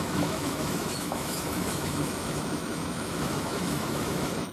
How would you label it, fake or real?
fake